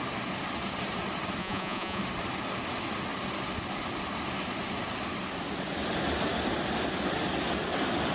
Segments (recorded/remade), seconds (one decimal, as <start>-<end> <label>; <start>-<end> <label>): 0.0-1.4 recorded; 1.4-2.0 remade; 2.0-8.1 recorded